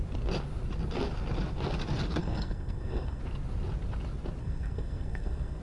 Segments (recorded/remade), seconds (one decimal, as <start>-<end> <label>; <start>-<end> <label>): 0.0-2.2 recorded; 2.2-3.2 remade; 3.2-4.4 recorded; 4.4-5.6 remade